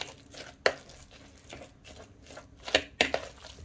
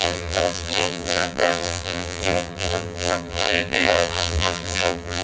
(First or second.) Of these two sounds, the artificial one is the second